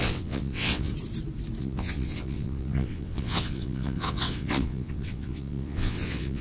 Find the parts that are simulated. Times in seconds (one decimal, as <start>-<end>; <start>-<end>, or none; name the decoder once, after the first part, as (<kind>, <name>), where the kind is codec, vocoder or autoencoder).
0.0-0.9 (vocoder, WaveNeXt); 1.6-6.4